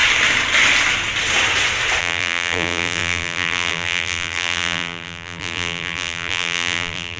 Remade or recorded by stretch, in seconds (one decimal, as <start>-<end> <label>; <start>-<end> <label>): 0.0-2.0 recorded; 2.0-7.2 remade